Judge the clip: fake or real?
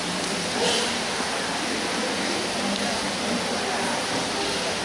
real